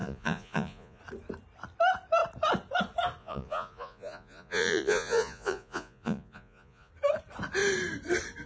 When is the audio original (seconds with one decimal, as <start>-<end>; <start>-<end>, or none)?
1.0-3.2; 6.9-8.5